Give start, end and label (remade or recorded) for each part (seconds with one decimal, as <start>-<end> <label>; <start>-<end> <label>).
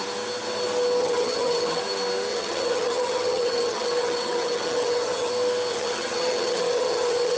0.0-1.0 recorded; 1.0-1.8 remade; 1.8-2.3 recorded; 2.3-5.3 remade; 5.3-5.7 recorded; 5.7-7.4 remade